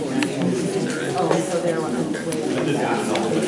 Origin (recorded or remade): recorded